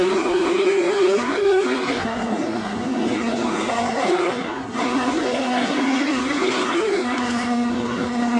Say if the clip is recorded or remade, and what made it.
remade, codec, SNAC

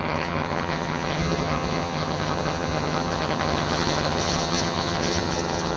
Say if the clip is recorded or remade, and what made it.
remade, vocoder, HiFi-GAN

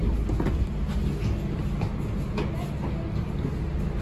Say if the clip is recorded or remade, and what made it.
recorded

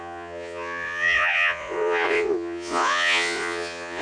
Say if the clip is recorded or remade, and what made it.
remade, vocoder, Vocos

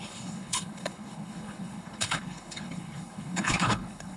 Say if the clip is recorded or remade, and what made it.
remade, codec, HILCodec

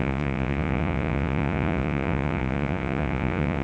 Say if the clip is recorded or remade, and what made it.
remade, vocoder, Vocos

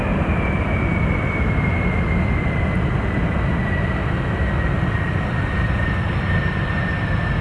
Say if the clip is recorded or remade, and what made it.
recorded